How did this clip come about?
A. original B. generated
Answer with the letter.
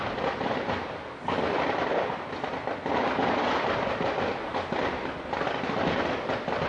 A